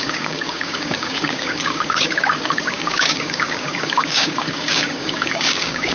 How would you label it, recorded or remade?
remade